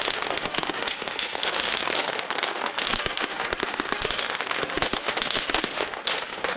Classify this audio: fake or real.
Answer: fake